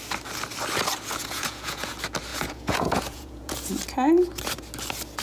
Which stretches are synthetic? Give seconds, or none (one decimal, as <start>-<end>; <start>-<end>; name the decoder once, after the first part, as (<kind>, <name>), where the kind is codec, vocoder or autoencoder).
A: 1.2-1.9 (vocoder, Vocos); 2.3-3.7

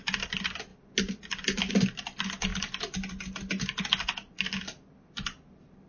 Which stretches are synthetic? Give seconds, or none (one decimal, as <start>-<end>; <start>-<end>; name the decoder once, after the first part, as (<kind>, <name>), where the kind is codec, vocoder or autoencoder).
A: none

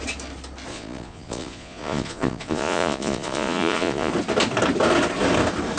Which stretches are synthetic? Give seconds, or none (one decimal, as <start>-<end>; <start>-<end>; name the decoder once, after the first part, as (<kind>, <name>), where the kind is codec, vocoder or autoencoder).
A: 0.7-4.1 (vocoder, Vocos)

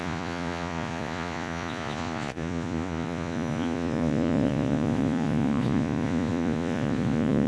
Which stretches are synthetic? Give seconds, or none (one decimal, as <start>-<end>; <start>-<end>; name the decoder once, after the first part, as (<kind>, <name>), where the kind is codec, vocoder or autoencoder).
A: 0.0-7.5 (vocoder, Vocos)

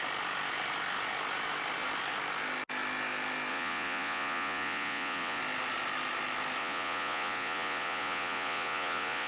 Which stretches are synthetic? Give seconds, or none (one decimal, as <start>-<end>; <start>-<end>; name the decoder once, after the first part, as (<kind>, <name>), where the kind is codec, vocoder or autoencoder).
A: 3.5-5.4 (vocoder, Vocos); 6.6-9.3

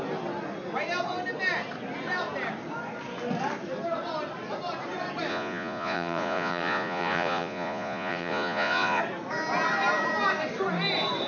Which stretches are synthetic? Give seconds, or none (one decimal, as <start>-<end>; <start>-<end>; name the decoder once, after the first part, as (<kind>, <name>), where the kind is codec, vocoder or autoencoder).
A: 5.3-9.0 (vocoder, Vocos)

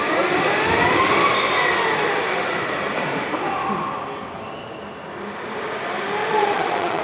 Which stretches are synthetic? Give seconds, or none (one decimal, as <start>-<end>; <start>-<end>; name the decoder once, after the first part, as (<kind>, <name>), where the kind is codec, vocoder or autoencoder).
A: 6.2-7.0 (vocoder, Vocos)